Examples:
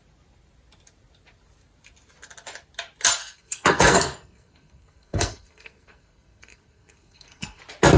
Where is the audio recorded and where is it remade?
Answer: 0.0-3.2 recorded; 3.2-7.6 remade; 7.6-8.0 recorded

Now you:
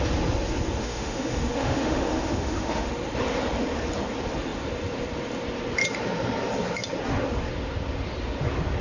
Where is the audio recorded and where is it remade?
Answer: 0.0-0.8 recorded; 0.8-2.9 remade; 2.9-8.8 recorded

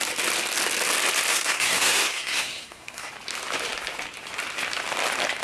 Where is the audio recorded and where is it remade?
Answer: 0.0-1.3 recorded; 1.3-3.1 remade; 3.1-5.4 recorded